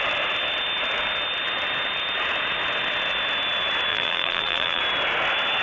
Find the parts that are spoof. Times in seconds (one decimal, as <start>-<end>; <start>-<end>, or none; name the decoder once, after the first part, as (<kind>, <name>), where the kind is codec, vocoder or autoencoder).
3.9-4.8 (vocoder, BigVGAN v2)

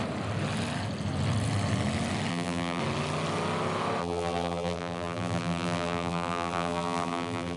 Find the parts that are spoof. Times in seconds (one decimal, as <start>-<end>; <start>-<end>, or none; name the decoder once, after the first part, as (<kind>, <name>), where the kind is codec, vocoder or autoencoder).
2.3-2.8 (vocoder, BigVGAN v2); 4.0-7.6

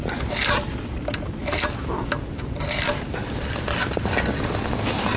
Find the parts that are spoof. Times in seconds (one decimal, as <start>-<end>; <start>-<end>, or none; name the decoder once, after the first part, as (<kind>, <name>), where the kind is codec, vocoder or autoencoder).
1.4-4.5 (vocoder, BigVGAN v2)

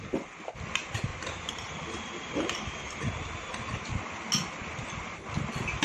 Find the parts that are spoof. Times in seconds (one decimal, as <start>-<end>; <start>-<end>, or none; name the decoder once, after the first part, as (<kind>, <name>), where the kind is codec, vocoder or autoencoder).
1.1-3.0 (vocoder, BigVGAN v2)

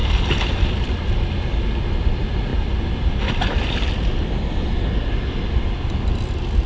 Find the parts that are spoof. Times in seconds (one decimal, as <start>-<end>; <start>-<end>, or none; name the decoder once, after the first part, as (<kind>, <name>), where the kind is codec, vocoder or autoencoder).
none

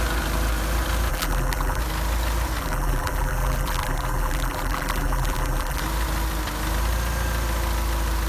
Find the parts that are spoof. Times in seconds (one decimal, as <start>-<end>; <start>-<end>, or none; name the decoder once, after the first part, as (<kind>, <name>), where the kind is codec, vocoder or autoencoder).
1.1-1.8 (vocoder, BigVGAN v2); 2.6-5.8